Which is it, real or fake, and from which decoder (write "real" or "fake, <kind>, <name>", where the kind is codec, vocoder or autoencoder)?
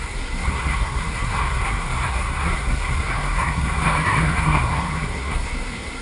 fake, codec, SNAC